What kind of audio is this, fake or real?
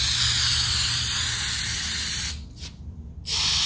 real